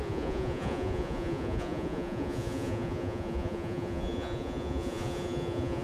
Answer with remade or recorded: remade